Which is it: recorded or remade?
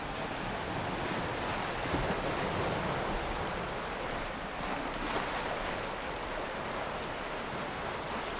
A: recorded